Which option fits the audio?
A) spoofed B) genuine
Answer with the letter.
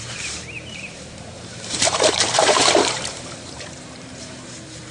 A